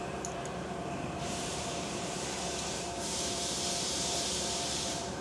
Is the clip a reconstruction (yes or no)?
yes